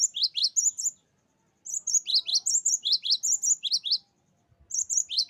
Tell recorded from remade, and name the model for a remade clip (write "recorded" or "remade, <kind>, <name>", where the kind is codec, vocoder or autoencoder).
recorded